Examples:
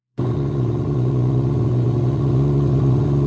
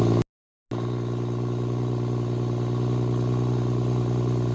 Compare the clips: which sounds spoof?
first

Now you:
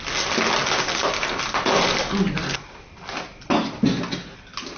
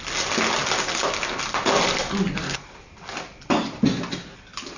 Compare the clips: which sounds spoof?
second